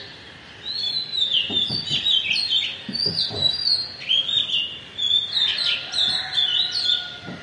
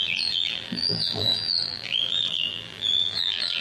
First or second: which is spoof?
second